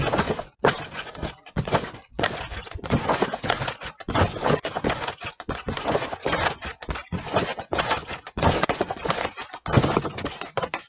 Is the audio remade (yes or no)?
yes